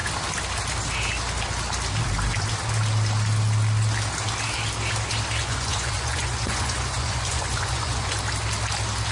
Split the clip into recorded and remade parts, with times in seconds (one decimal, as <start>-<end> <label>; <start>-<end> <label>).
0.0-5.4 recorded; 5.4-8.1 remade; 8.1-9.1 recorded